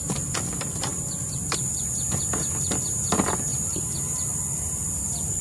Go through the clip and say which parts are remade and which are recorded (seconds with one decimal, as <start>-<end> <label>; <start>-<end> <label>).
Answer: 0.0-5.4 recorded